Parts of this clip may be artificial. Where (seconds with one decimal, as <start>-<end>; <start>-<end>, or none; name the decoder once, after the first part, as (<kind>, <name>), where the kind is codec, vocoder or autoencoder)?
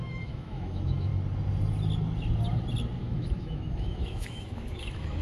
0.0-1.1 (autoencoder, DAC-VAE); 3.0-5.2